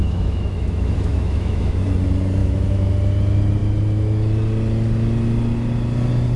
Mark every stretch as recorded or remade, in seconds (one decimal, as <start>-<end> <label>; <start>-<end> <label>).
0.0-1.8 remade; 1.8-2.4 recorded; 2.4-2.9 remade; 2.9-6.4 recorded